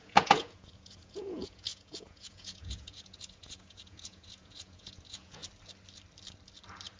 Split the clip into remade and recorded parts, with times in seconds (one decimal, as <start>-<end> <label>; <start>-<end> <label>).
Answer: 0.0-5.4 remade; 5.4-7.0 recorded